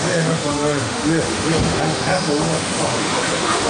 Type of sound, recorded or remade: remade